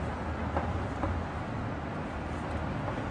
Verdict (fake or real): real